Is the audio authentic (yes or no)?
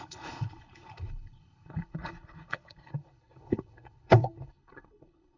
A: no